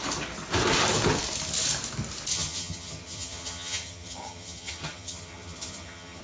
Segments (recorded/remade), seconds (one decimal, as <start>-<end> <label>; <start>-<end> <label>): 0.0-2.3 recorded; 2.3-6.2 remade